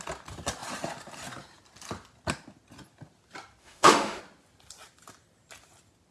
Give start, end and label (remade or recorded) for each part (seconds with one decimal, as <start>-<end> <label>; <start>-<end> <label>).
0.0-3.6 recorded; 3.6-4.2 remade; 4.2-6.1 recorded